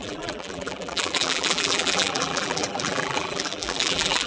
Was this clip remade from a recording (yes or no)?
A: yes